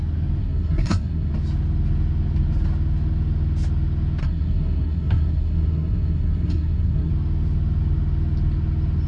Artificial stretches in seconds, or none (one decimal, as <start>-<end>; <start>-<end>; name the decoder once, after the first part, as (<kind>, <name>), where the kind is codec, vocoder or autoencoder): 0.4-1.3 (codec, SNAC); 4.2-7.1